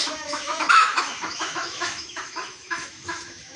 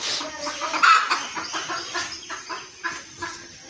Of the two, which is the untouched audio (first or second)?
second